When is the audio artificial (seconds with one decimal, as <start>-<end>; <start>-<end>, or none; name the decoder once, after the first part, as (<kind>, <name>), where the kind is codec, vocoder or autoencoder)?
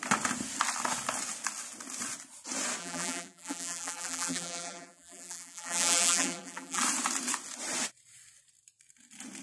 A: 2.8-6.8 (vocoder, BigVGAN v2)